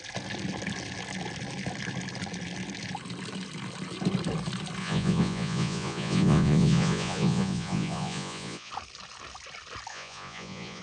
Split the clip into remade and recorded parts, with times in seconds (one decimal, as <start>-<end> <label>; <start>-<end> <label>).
0.0-4.8 recorded; 4.8-8.7 remade; 8.7-9.9 recorded; 9.9-10.8 remade